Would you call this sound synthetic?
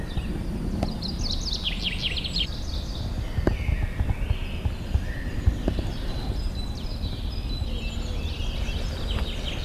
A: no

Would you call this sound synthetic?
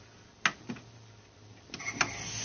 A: no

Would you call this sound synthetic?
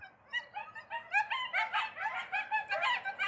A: no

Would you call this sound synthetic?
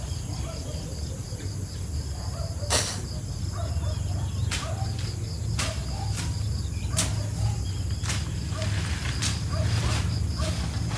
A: no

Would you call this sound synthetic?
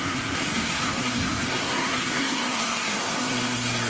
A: yes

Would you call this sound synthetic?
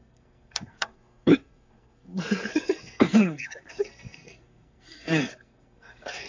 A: yes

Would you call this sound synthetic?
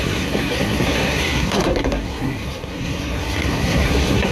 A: yes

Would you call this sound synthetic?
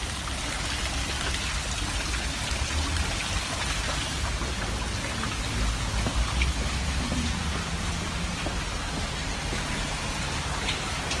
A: no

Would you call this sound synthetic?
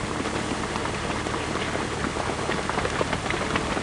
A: no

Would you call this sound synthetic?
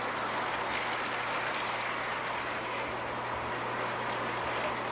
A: no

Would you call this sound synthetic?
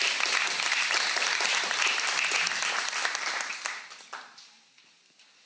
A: no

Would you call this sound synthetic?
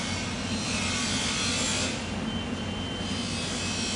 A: no